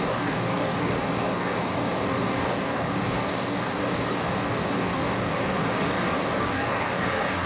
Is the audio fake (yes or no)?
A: yes